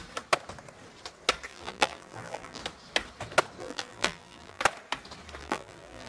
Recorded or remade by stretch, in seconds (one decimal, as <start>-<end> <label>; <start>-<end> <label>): 0.0-1.5 recorded; 1.5-2.6 remade; 2.6-3.6 recorded; 3.6-4.6 remade; 4.6-5.4 recorded; 5.4-6.1 remade

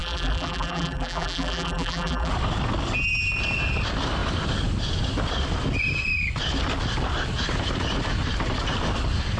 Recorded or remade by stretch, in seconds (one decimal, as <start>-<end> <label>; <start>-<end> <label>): 0.0-2.3 remade; 2.3-9.4 recorded

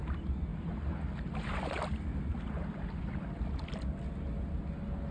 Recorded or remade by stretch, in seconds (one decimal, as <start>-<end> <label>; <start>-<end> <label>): 0.0-5.1 recorded

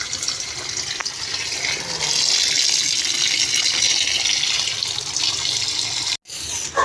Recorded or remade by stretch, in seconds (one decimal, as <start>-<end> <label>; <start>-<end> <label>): 0.0-6.8 recorded

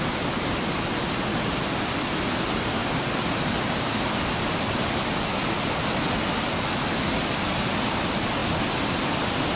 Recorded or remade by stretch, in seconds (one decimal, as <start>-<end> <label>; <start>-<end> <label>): 0.0-1.3 recorded; 1.3-1.9 remade; 1.9-2.8 recorded; 2.8-5.1 remade; 5.1-9.6 recorded

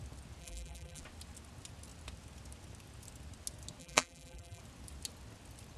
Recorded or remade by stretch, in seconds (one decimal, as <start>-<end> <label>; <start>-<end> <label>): 0.0-0.4 recorded; 0.4-1.0 remade; 1.0-3.8 recorded; 3.8-4.6 remade; 4.6-5.8 recorded